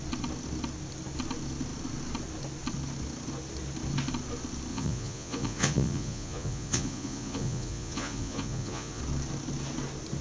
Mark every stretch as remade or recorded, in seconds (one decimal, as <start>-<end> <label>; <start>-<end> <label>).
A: 0.0-4.7 recorded; 4.7-9.0 remade; 9.0-10.2 recorded

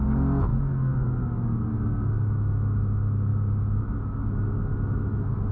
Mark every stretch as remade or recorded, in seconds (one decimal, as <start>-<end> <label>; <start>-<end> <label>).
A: 0.0-5.5 recorded

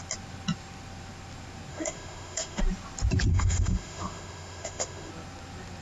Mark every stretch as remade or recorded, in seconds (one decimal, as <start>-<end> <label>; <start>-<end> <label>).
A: 0.0-1.7 recorded; 1.7-2.6 remade; 2.6-3.3 recorded; 3.3-5.1 remade; 5.1-5.8 recorded

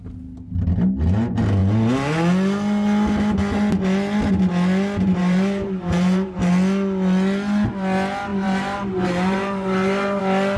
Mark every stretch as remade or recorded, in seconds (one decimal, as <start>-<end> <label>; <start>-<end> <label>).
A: 0.0-5.2 recorded; 5.2-6.5 remade; 6.5-8.3 recorded; 8.3-10.2 remade; 10.2-10.6 recorded